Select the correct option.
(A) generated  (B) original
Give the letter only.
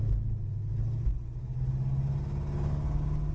B